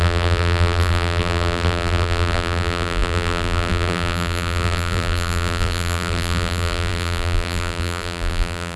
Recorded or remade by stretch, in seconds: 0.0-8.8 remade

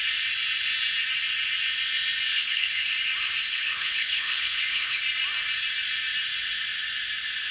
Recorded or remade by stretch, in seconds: 0.0-2.3 recorded; 2.3-2.9 remade; 2.9-3.5 recorded; 3.5-5.0 remade; 5.0-7.5 recorded

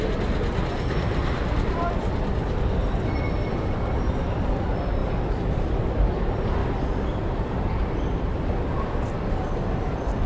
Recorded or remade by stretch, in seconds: 0.0-1.2 recorded; 1.2-4.5 remade; 4.5-6.6 recorded; 6.6-8.5 remade; 8.5-10.3 recorded

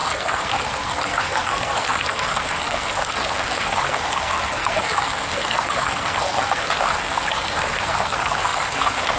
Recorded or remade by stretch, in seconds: 0.0-9.2 remade